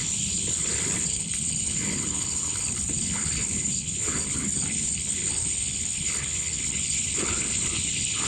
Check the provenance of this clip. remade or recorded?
remade